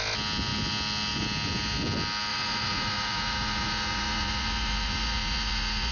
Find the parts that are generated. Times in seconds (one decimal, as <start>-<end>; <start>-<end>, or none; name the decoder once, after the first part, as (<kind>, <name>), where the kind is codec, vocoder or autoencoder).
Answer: 2.3-5.9 (vocoder, Vocos)